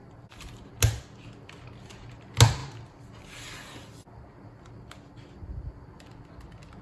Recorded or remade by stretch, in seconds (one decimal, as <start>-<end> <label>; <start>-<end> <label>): 0.0-6.8 recorded